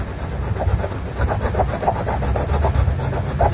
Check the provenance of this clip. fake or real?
real